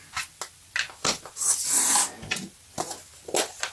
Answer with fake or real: real